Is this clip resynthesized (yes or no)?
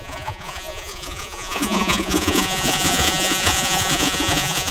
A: yes